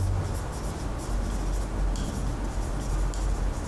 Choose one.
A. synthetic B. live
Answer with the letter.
B